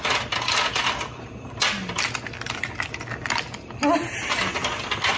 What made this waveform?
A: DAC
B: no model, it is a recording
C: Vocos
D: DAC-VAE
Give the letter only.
B